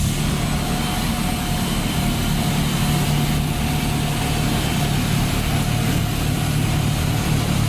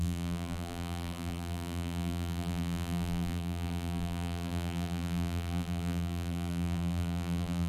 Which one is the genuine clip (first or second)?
first